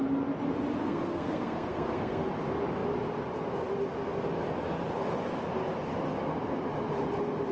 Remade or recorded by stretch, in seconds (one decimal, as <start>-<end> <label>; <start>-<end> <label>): 0.0-0.8 recorded; 0.8-2.3 remade; 2.3-7.5 recorded